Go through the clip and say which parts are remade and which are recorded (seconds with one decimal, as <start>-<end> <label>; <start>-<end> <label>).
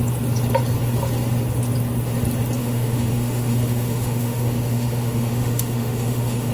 0.0-2.6 recorded; 2.6-6.5 remade